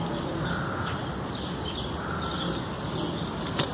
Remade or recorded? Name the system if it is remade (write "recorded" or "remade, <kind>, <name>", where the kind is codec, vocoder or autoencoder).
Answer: recorded